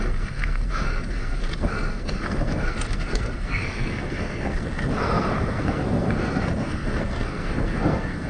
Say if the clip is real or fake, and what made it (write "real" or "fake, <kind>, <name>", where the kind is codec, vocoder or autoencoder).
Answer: fake, codec, SNAC